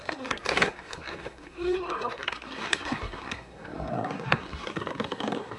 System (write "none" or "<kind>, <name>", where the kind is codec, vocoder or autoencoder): codec, SNAC